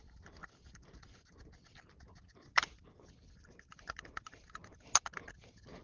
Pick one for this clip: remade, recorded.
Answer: recorded